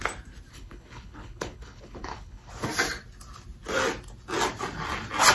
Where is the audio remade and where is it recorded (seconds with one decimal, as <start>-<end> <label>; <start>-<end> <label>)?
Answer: 0.0-0.5 recorded; 0.5-2.5 remade; 2.5-5.3 recorded